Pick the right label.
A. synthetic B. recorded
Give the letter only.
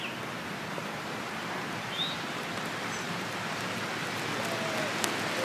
B